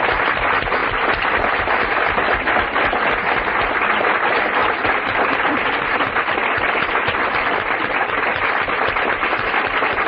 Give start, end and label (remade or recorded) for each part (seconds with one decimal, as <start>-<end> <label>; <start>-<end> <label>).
0.0-0.8 recorded; 0.8-1.6 remade; 1.6-4.6 recorded; 4.6-9.1 remade; 9.1-10.1 recorded